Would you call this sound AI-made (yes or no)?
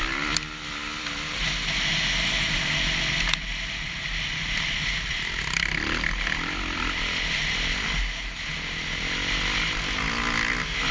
no